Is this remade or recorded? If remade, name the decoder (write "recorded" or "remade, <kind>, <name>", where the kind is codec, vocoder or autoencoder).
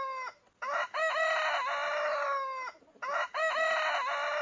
recorded